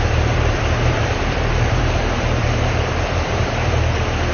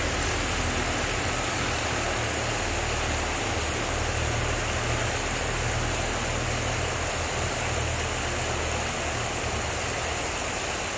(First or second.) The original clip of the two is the second